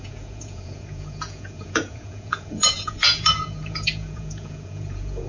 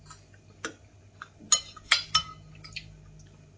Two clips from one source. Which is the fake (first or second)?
first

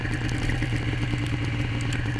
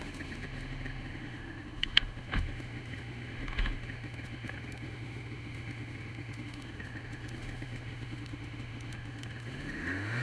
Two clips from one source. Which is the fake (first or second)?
second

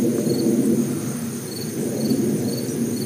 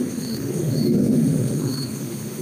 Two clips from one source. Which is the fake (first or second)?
second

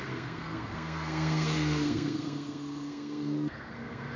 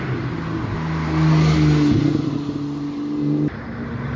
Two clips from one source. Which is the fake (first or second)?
first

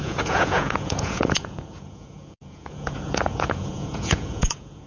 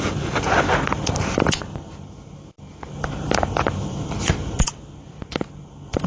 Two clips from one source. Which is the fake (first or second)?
first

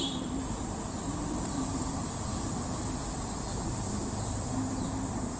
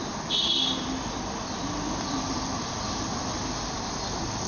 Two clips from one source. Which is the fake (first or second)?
first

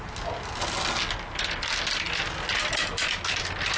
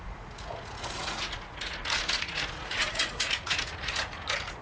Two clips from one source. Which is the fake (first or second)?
second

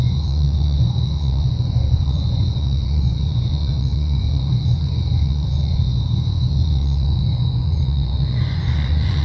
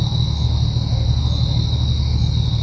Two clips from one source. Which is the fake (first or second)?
first